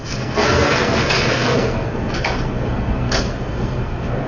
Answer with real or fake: fake